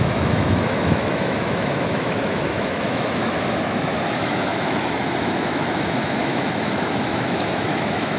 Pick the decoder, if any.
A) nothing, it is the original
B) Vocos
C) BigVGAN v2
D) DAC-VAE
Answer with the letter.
D